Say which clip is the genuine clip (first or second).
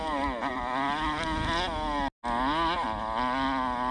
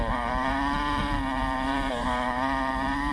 first